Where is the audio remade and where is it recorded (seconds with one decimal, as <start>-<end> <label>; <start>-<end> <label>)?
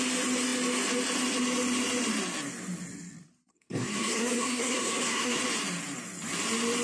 0.0-3.5 recorded; 3.5-5.4 remade; 5.4-6.8 recorded